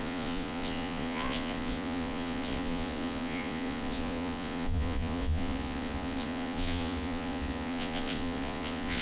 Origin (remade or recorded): remade